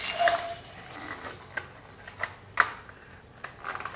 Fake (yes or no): no